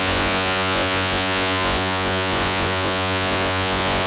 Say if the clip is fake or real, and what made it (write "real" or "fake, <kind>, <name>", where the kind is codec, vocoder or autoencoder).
fake, vocoder, Vocos